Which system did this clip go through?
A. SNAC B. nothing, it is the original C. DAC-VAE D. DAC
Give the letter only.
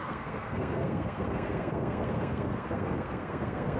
A